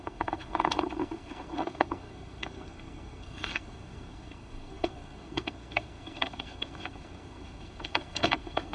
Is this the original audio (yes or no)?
no